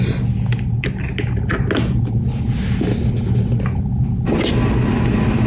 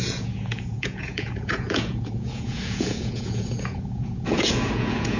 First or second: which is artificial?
second